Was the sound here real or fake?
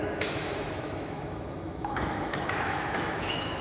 fake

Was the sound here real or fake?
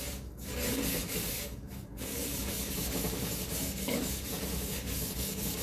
fake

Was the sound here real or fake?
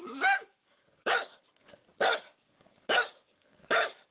fake